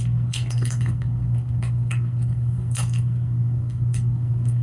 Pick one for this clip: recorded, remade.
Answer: remade